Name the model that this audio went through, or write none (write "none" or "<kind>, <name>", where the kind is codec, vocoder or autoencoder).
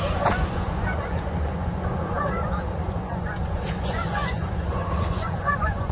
vocoder, Vocos